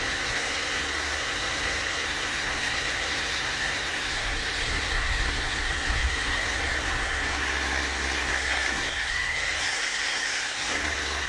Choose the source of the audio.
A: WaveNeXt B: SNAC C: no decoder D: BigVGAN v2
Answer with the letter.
B